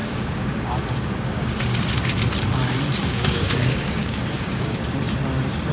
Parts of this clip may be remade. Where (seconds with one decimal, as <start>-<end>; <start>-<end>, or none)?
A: 0.0-1.5; 3.0-4.8